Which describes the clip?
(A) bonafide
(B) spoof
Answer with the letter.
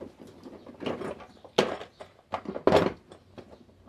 A